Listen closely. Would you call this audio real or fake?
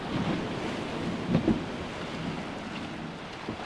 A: real